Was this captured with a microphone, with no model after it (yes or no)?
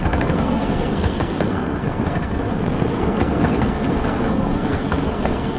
no